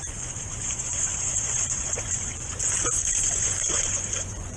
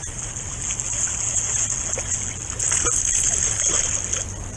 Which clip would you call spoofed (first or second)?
first